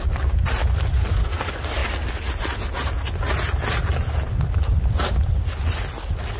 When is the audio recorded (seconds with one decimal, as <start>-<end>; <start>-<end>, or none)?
0.0-6.4